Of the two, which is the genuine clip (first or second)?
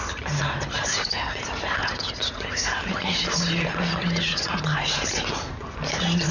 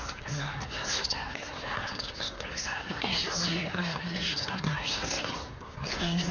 first